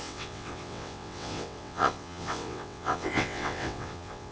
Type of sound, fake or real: fake